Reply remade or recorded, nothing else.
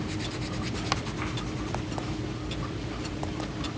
recorded